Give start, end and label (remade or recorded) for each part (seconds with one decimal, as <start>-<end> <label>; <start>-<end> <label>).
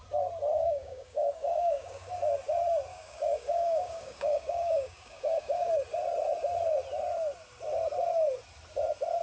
0.0-0.6 recorded; 0.6-2.1 remade; 2.1-2.9 recorded; 2.9-5.7 remade; 5.7-9.2 recorded